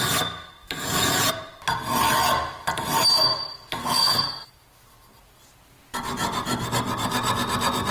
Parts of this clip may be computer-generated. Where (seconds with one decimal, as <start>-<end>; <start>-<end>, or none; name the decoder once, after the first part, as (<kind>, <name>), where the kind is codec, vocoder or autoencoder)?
3.8-4.5 (codec, SNAC)

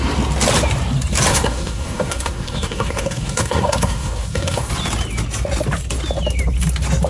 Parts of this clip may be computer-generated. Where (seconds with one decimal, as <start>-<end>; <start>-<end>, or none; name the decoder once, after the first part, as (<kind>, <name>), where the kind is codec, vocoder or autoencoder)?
1.3-4.7 (codec, SNAC)

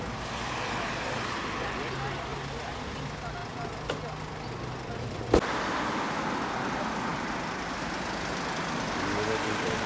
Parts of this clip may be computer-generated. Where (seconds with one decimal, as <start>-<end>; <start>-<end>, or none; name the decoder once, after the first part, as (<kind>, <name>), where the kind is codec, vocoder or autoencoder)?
none

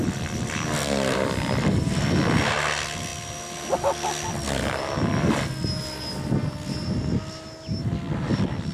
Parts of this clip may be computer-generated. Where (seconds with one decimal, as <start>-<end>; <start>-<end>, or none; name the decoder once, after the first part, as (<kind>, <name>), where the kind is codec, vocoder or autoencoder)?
none

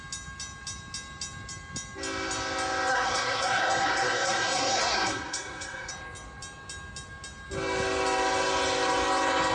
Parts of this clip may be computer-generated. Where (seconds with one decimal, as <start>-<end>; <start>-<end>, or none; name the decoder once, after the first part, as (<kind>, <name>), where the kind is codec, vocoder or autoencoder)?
2.9-5.9 (codec, SNAC)

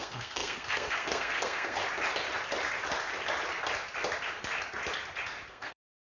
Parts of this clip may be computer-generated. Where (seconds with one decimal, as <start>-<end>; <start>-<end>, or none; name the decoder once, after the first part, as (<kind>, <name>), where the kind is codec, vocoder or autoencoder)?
0.0-1.8 (codec, SNAC); 5.5-6.1

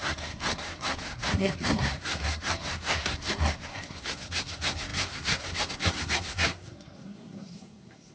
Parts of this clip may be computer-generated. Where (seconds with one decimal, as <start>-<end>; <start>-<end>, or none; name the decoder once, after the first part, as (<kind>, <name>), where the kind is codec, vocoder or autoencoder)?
0.0-8.1 (codec, SNAC)